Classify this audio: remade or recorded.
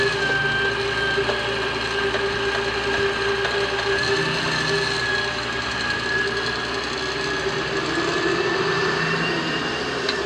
recorded